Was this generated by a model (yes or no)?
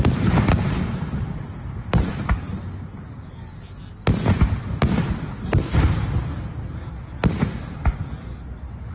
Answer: no